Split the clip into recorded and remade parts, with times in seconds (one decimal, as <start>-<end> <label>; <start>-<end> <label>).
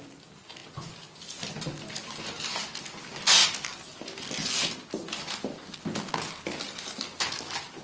0.0-7.8 recorded